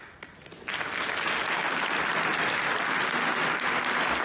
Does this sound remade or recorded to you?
recorded